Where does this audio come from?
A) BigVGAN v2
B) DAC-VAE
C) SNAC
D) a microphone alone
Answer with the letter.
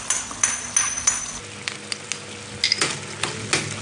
D